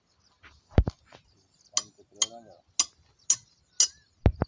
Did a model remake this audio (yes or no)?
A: no